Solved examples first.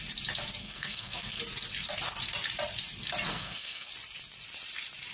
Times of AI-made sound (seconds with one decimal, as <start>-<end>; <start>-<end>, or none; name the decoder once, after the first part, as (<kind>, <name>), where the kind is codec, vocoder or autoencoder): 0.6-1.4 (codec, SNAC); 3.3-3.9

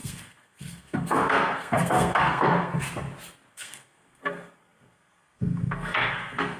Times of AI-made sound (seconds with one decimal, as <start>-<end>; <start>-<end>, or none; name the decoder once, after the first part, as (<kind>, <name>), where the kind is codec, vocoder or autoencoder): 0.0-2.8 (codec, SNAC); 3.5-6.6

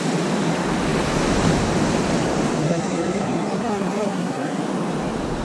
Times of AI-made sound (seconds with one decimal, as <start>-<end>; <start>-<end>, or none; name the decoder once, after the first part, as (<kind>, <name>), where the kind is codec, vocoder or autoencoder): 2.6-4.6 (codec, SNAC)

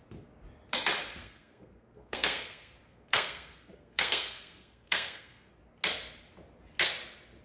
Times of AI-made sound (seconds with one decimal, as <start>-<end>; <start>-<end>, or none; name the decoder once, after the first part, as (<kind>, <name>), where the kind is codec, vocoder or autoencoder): 1.2-5.6 (codec, SNAC)

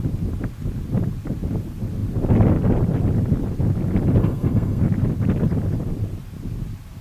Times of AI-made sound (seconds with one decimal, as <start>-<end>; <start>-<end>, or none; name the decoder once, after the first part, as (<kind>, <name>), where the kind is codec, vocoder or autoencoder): 4.2-4.8 (codec, SNAC)

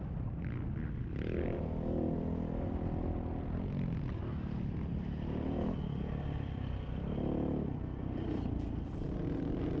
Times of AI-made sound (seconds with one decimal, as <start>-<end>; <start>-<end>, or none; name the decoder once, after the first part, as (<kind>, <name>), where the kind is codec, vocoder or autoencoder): none